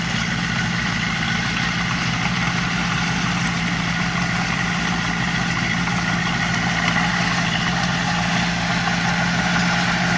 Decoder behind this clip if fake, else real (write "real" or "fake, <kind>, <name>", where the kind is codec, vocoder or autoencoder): real